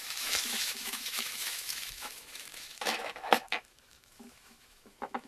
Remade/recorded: remade